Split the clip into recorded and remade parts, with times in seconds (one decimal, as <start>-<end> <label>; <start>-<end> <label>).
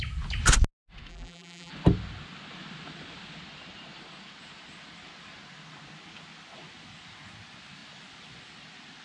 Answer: 0.0-1.1 recorded; 1.1-1.7 remade; 1.7-9.0 recorded